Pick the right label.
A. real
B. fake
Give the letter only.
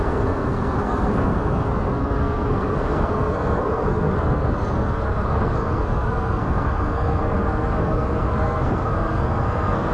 B